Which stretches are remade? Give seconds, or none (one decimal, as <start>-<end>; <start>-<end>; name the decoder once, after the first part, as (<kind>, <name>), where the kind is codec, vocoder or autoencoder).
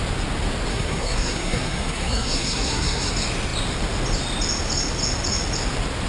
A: 0.7-3.1 (codec, SNAC)